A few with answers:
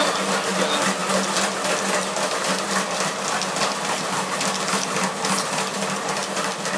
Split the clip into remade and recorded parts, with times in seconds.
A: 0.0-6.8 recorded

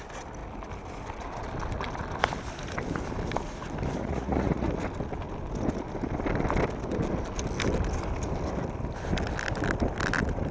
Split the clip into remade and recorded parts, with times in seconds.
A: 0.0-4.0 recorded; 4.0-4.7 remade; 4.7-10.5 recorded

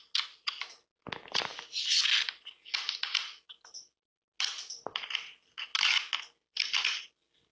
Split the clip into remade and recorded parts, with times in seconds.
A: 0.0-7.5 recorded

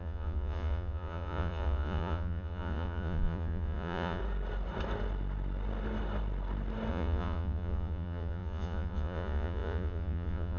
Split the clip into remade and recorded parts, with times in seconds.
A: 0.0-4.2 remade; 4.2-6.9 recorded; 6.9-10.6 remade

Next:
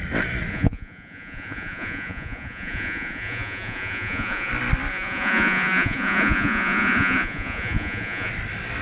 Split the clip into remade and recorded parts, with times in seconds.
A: 0.0-0.5 recorded; 0.5-4.5 remade; 4.5-4.9 recorded; 4.9-8.3 remade; 8.3-8.8 recorded

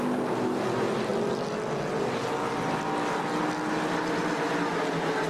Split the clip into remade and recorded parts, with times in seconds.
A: 0.0-5.3 recorded

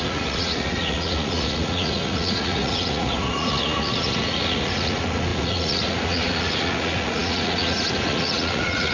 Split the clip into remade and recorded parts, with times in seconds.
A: 0.0-8.9 remade

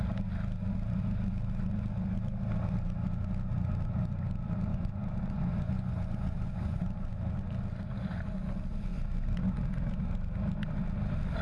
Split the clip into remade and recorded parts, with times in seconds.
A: 0.0-4.7 recorded; 4.7-6.8 remade; 6.8-11.4 recorded